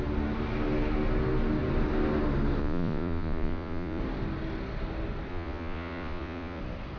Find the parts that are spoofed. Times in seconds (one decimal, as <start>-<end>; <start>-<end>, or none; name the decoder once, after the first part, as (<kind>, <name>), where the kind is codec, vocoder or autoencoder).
2.6-4.0 (vocoder, Vocos); 5.3-6.6